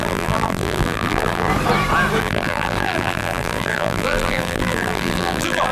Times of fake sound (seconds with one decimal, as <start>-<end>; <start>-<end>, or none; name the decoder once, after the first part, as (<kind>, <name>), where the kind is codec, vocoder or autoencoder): 0.0-1.5 (vocoder, BigVGAN v2); 2.2-5.7

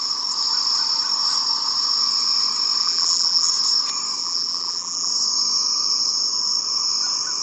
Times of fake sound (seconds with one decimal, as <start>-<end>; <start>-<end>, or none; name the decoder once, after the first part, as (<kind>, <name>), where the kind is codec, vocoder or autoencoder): 2.8-3.5 (vocoder, BigVGAN v2); 4.2-5.1

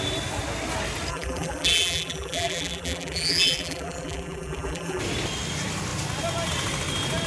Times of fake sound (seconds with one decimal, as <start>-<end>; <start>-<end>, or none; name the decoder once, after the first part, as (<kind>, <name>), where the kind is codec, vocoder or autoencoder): 1.1-5.0 (vocoder, BigVGAN v2)

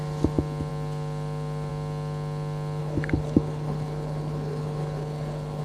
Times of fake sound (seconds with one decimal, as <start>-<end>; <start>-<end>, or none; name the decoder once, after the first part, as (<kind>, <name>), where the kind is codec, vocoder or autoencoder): 2.8-5.6 (codec, HILCodec)